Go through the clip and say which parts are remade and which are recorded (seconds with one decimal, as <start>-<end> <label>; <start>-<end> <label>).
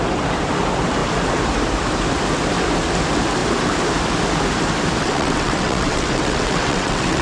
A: 0.0-5.0 recorded; 5.0-7.2 remade